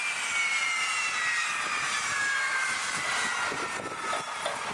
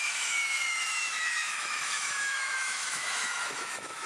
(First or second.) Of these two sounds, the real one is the first